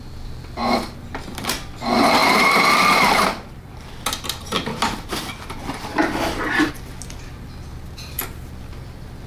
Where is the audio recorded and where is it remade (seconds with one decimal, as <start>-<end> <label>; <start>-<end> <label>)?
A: 0.0-2.2 recorded; 2.2-3.9 remade; 3.9-4.7 recorded; 4.7-6.7 remade; 6.7-9.3 recorded